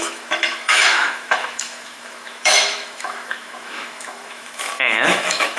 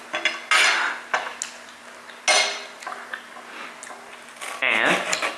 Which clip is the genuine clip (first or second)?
second